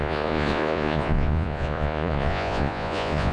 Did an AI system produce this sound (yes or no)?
yes